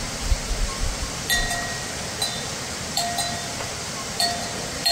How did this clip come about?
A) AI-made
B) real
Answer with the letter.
A